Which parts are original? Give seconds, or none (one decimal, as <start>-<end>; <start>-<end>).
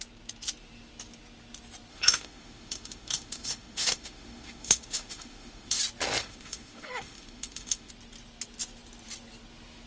0.0-1.9; 5.8-6.2; 7.9-9.9